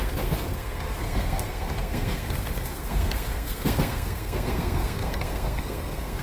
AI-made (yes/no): yes